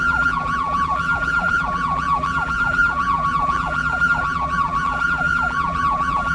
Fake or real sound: fake